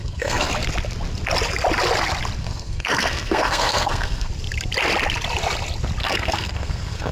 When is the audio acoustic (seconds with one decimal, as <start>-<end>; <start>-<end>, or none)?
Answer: 0.5-2.4; 4.3-6.0